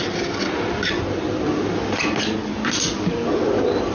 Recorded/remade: recorded